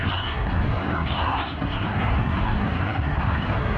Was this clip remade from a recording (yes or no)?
yes